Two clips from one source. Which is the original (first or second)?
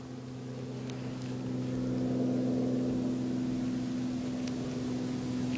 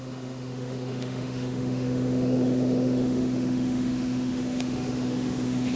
first